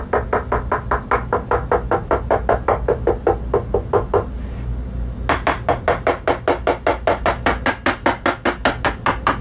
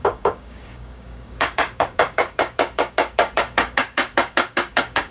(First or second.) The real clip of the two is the first